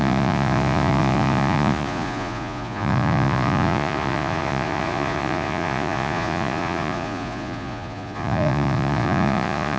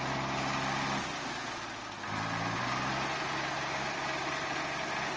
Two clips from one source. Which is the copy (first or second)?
first